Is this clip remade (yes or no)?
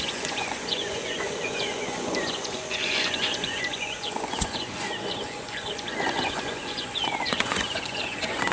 yes